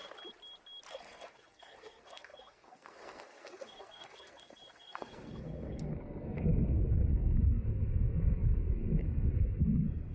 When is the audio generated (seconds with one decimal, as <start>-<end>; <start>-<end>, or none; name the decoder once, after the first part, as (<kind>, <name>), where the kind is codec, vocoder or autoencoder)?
0.9-10.1 (codec, SNAC)